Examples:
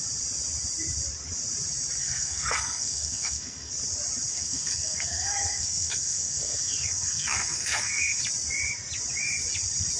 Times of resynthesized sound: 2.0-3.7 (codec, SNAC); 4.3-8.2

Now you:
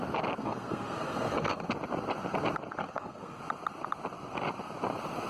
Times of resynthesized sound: 0.4-1.7 (codec, SNAC); 2.8-3.4

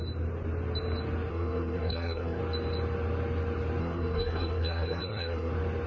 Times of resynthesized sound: 1.3-2.4 (codec, SNAC); 3.8-5.5

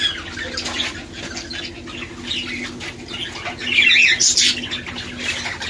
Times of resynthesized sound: none

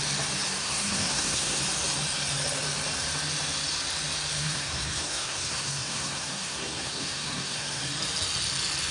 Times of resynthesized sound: 0.6-1.6 (codec, SNAC); 4.4-7.8

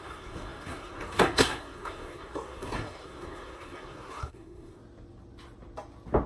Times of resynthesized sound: 0.0-4.8 (codec, SNAC)